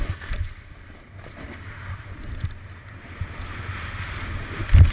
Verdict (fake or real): real